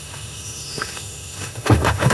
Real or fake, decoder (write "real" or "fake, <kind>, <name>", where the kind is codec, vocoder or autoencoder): fake, autoencoder, DAC-VAE